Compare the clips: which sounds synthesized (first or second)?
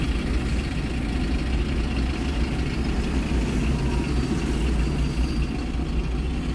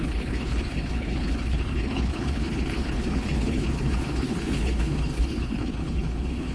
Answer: second